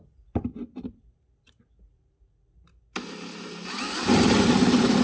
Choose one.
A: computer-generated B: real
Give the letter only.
B